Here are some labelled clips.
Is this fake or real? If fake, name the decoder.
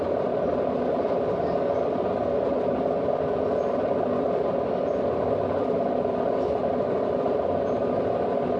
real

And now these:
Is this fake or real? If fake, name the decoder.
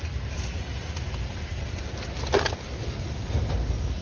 real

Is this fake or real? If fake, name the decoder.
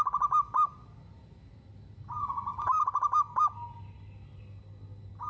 real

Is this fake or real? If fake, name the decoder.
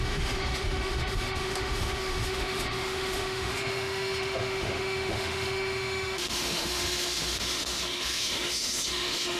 fake, autoencoder, DAC-VAE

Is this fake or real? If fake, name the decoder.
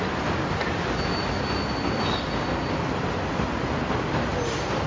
real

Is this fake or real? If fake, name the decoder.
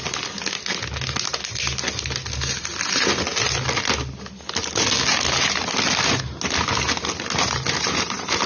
real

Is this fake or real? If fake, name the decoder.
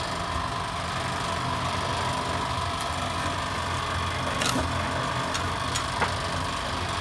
real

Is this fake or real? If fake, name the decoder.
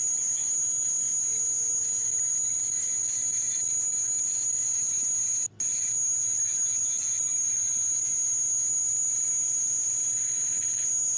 real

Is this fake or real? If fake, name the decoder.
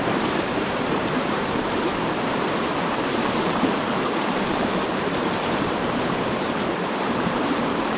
fake, vocoder, BigVGAN v2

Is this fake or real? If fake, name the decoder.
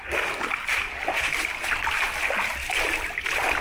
real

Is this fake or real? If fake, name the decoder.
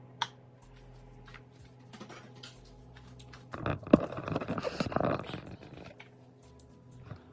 real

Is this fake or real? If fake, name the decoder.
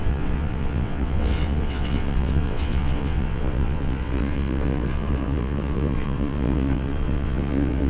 fake, vocoder, WaveNeXt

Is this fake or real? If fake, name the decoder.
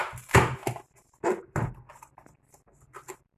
real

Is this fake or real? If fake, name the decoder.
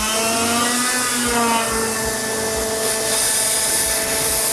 real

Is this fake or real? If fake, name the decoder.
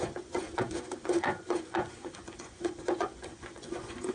fake, vocoder, Vocos